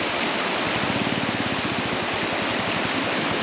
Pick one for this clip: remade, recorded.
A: recorded